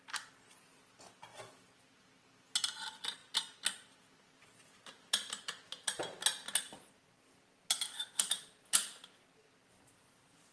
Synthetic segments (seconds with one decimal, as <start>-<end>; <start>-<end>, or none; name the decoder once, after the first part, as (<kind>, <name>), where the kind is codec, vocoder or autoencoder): none